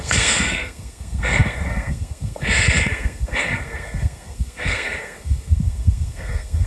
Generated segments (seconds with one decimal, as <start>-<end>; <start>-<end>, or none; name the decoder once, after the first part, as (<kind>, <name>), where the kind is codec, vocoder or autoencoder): 0.0-6.7 (codec, SNAC)